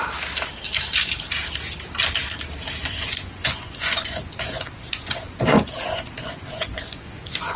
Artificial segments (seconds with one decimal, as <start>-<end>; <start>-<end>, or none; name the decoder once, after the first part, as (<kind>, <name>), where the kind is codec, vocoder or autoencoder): 2.8-7.6 (vocoder, Vocos)